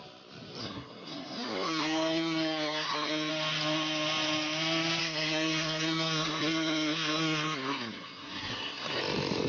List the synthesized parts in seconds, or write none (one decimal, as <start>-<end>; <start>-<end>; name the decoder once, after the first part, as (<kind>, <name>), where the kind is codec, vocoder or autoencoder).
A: 0.6-3.3 (codec, SNAC); 5.0-9.0